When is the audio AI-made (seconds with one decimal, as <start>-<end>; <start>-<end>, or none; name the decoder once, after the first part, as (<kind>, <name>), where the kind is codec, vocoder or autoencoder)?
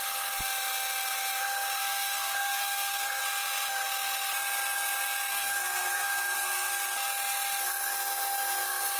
1.8-3.2 (codec, SNAC); 5.3-6.7